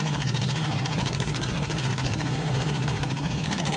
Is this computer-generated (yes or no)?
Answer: yes